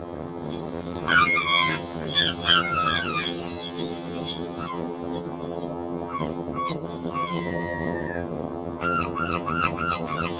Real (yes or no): no